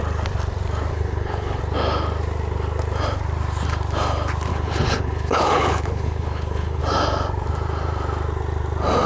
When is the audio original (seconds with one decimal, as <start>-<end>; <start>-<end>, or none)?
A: 0.0-0.9; 1.6-4.5; 6.8-9.1